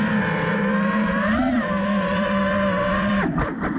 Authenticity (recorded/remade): remade